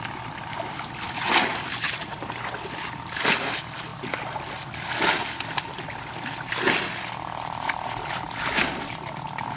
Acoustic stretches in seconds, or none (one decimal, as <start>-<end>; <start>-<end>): 0.0-9.6